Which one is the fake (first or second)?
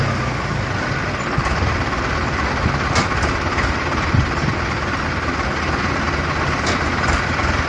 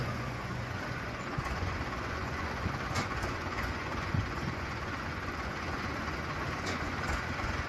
second